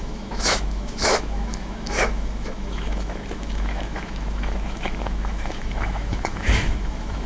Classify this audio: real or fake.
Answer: fake